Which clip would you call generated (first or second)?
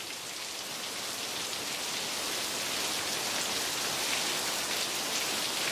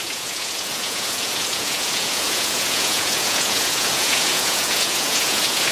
second